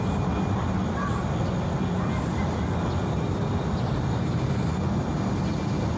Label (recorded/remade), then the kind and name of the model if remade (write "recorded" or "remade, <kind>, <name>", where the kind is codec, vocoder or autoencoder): recorded